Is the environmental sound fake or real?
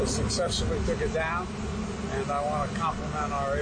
real